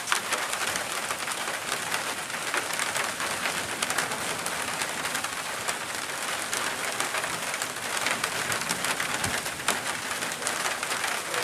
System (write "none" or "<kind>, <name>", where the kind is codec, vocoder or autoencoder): none